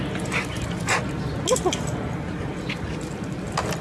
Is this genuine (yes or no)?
yes